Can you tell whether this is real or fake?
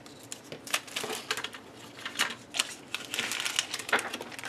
real